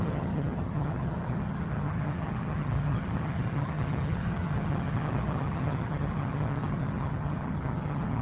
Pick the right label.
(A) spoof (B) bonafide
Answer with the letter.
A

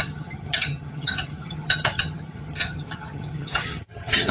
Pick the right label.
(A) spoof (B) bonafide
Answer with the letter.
A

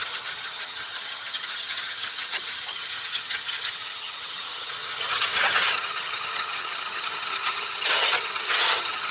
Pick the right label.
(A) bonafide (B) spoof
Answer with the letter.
B